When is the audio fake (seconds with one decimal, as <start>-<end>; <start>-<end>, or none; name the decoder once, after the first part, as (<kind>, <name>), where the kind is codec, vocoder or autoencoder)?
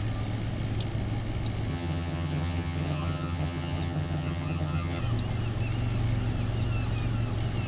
1.7-5.0 (vocoder, HiFi-GAN)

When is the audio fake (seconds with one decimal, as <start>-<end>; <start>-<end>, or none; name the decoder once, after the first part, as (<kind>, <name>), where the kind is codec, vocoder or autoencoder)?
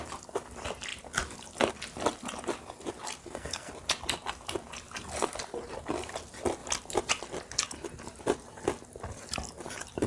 3.2-3.7 (codec, SNAC)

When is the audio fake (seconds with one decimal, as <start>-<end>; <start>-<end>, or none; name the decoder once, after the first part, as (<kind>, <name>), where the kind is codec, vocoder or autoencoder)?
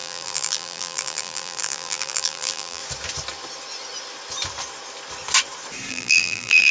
0.0-2.8 (vocoder, BigVGAN v2); 5.9-6.7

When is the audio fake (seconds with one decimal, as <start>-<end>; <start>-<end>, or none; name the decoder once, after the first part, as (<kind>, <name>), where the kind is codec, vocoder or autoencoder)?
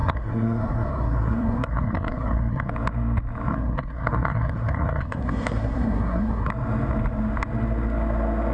0.0-2.7 (codec, SNAC); 3.5-6.5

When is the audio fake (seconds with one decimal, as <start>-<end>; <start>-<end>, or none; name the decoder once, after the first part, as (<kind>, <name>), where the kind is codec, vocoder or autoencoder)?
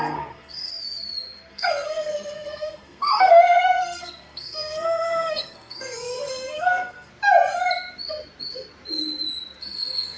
0.0-0.7 (codec, SNAC); 1.5-7.1; 9.6-10.2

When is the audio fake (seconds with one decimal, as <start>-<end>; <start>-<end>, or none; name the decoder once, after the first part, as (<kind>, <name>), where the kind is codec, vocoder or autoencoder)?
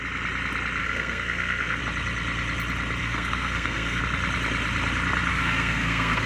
0.8-1.8 (codec, SNAC); 3.0-4.0; 5.3-6.3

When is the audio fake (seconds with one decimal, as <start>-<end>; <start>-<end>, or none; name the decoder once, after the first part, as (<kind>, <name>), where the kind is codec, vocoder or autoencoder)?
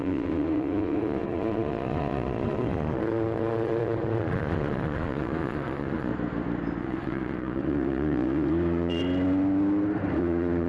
0.0-6.1 (vocoder, Vocos); 6.8-9.0; 10.2-10.7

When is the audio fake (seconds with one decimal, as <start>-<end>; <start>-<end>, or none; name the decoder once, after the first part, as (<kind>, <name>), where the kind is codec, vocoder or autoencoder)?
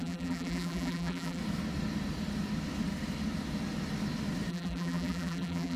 0.0-1.4 (vocoder, BigVGAN v2); 4.5-5.8